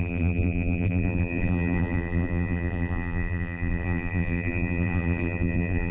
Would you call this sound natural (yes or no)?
no